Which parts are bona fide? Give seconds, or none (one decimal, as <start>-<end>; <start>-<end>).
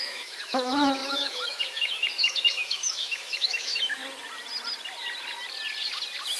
4.0-6.4